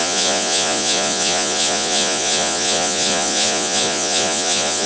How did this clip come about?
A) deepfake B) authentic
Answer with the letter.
A